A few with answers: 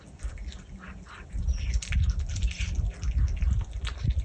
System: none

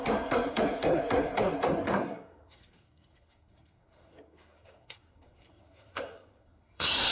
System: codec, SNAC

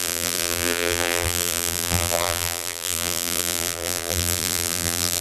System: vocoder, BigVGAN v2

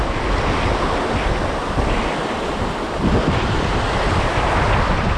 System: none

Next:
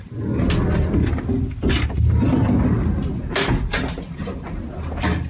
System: none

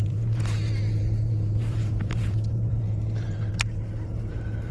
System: vocoder, BigVGAN v2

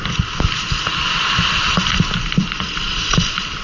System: none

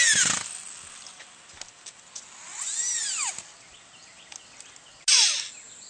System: none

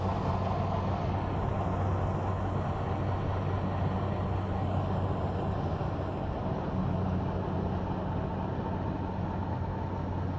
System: none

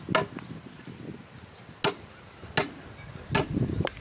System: none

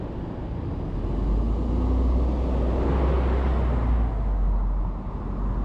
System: none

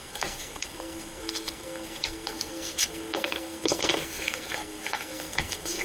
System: codec, SNAC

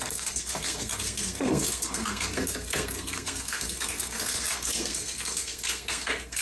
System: codec, SNAC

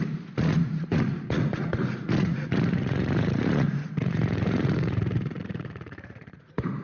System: vocoder, Vocos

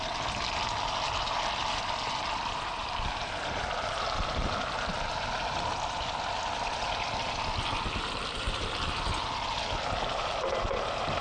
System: none